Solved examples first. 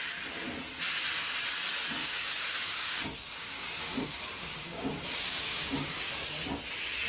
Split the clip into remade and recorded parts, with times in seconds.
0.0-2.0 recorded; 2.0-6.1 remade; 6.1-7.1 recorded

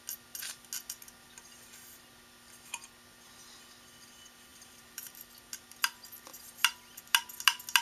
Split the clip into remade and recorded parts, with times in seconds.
0.0-4.5 recorded; 4.5-5.2 remade; 5.2-7.8 recorded

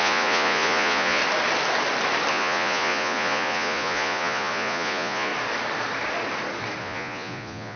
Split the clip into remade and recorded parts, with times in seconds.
0.0-1.2 remade; 1.2-2.3 recorded; 2.3-5.3 remade; 5.3-6.8 recorded; 6.8-7.8 remade

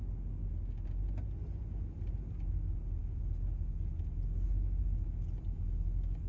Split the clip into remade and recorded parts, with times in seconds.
0.0-6.3 recorded

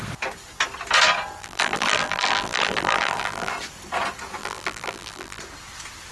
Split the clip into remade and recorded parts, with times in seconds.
0.0-1.4 recorded; 1.4-3.5 remade; 3.5-4.4 recorded; 4.4-5.4 remade; 5.4-6.1 recorded